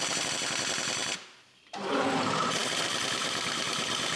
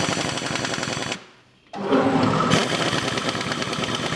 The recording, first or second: second